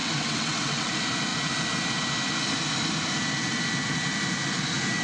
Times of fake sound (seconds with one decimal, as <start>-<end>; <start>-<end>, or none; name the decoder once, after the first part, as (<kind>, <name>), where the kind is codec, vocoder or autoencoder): 0.0-0.9 (vocoder, WaveNeXt)